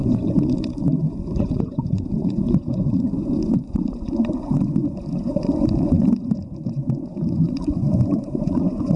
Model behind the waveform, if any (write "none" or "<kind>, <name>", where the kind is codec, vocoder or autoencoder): vocoder, Vocos